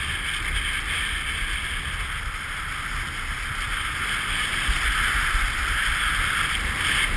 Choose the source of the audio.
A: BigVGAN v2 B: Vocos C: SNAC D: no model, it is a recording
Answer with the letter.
D